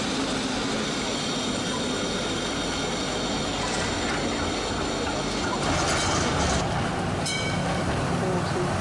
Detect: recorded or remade recorded